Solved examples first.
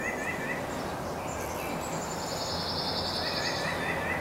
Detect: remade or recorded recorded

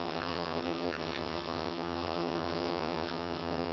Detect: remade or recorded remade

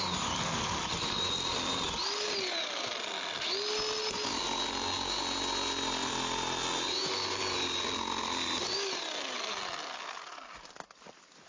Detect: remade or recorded recorded